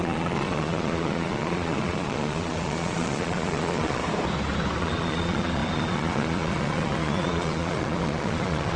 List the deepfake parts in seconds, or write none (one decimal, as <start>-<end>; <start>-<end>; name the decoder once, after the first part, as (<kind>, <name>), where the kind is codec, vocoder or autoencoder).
0.0-4.0 (vocoder, Vocos); 4.8-8.8